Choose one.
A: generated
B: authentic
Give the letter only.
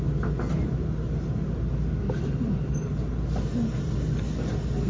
B